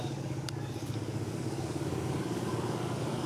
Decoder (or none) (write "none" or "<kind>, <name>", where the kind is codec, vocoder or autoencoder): codec, DAC